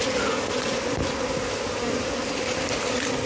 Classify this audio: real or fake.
real